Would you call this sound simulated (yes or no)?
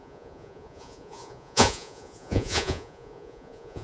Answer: yes